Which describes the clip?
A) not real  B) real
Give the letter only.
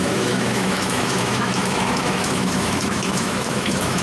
A